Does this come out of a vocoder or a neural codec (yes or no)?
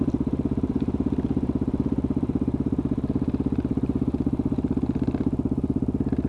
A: yes